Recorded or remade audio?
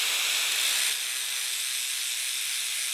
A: recorded